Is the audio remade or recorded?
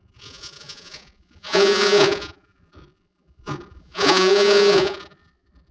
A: remade